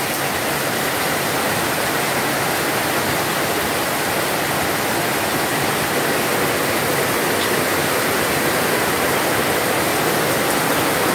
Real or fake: real